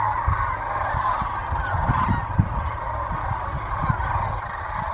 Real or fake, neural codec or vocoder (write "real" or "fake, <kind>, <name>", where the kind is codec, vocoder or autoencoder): real